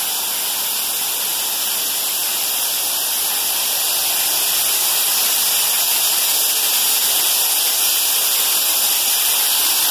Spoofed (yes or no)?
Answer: no